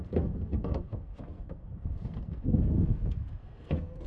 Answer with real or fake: fake